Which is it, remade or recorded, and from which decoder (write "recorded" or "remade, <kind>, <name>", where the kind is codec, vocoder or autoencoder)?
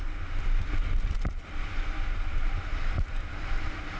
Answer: recorded